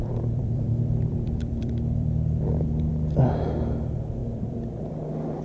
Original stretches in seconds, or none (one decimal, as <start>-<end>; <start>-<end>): 2.9-4.2; 4.8-5.4